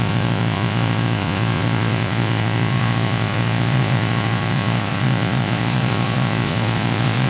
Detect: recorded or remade remade